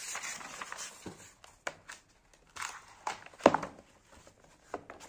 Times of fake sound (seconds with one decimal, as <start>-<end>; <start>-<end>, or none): none